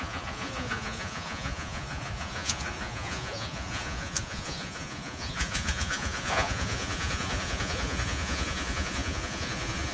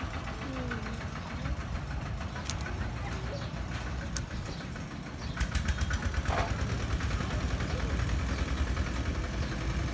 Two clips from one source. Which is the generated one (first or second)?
first